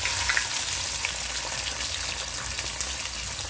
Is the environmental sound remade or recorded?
recorded